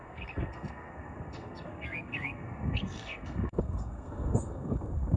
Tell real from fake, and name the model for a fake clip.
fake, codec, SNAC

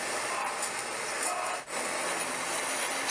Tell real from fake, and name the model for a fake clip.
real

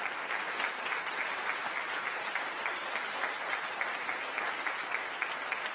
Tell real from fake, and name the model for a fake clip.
real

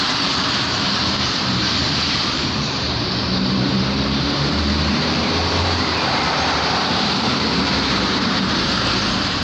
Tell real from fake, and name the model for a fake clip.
fake, vocoder, BigVGAN v2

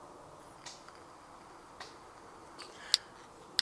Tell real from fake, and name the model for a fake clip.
real